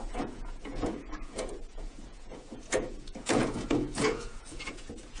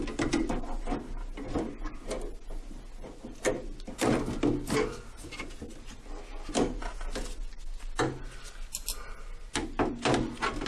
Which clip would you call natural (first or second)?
second